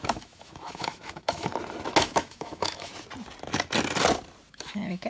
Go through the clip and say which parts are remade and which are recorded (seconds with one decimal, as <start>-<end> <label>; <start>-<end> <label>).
0.0-1.5 remade; 1.5-2.0 recorded; 2.0-2.9 remade; 2.9-4.5 recorded; 4.5-5.1 remade